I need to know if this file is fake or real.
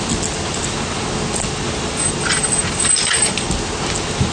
real